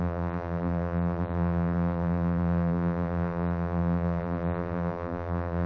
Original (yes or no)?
no